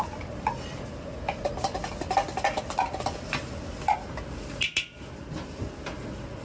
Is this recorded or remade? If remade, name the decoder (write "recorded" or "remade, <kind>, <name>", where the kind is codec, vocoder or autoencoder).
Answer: recorded